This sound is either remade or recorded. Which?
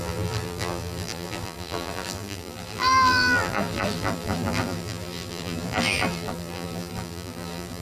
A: remade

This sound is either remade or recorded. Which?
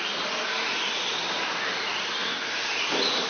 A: recorded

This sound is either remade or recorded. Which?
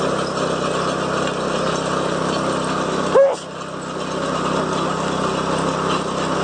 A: recorded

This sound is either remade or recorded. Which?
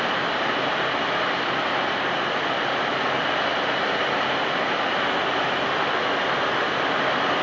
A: recorded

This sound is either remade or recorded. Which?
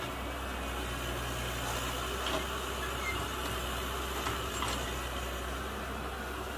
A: recorded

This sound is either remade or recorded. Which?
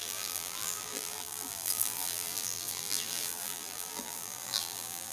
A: remade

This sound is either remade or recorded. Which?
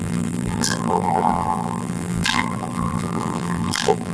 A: remade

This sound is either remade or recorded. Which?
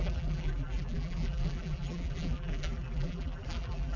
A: remade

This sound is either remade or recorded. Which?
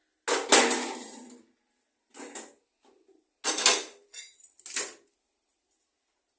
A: recorded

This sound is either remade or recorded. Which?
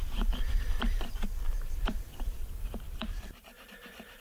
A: remade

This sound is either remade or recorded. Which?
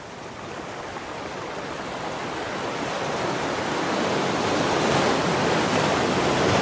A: recorded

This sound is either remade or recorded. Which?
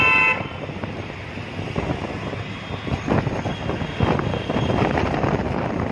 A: recorded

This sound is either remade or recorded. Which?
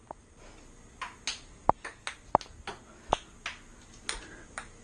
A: recorded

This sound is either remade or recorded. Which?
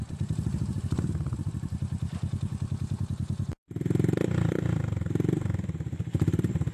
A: remade